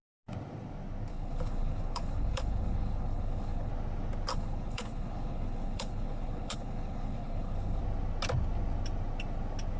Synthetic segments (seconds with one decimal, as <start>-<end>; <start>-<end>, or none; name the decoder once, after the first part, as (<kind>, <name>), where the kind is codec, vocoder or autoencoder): 1.1-3.7 (codec, HILCodec); 4.3-7.8